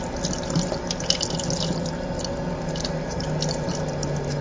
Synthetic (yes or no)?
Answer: no